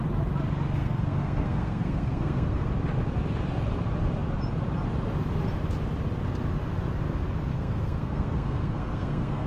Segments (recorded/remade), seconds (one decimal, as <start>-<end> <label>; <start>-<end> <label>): 0.0-0.8 recorded; 0.8-2.7 remade; 2.7-7.5 recorded; 7.5-9.5 remade